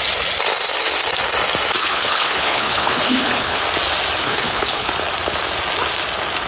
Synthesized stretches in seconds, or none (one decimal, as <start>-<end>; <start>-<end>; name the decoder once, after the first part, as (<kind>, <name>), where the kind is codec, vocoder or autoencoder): 1.8-3.6 (codec, HILCodec); 4.2-4.9